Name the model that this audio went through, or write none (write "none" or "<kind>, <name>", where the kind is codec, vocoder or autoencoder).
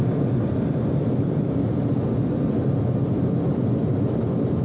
none